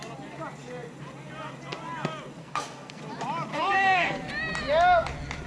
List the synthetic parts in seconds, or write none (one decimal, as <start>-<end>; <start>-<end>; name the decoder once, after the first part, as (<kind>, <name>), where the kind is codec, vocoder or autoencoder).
2.4-3.0 (codec, SNAC); 3.5-4.3